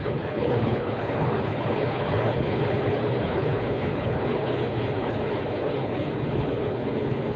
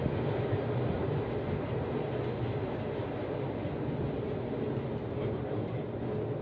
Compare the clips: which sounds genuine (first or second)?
second